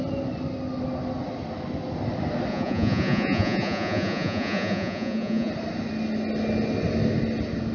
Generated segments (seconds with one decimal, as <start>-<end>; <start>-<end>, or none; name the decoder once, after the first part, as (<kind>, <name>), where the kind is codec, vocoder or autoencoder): 2.5-5.5 (vocoder, Vocos)